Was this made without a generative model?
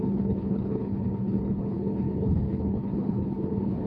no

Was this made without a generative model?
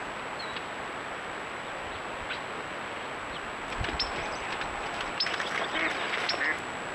yes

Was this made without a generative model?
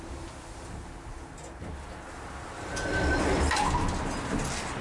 yes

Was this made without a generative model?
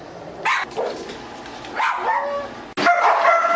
yes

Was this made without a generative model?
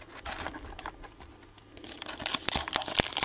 yes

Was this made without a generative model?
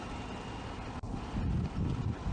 yes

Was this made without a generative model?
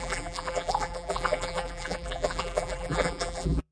no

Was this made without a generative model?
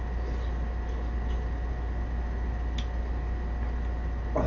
yes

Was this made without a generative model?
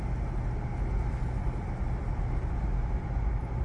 yes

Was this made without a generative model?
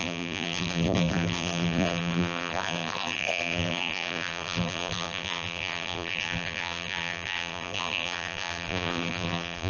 no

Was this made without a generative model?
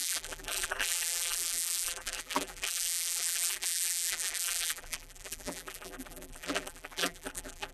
no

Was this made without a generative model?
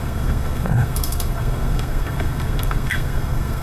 no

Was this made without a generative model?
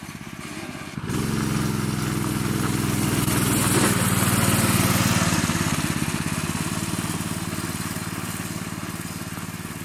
yes